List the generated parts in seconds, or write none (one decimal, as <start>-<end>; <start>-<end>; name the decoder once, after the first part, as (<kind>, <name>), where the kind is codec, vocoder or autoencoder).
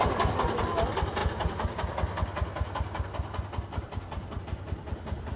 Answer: none